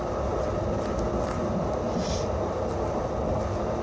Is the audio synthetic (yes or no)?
no